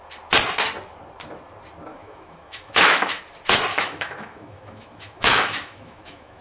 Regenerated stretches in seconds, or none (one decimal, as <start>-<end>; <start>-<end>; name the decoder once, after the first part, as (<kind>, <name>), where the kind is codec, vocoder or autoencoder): 1.9-3.2 (autoencoder, DAC-VAE); 3.7-6.4